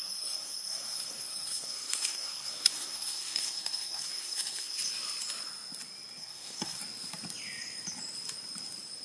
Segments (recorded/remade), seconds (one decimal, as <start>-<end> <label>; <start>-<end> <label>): 0.0-4.8 remade; 4.8-6.2 recorded; 6.2-6.8 remade; 6.8-9.0 recorded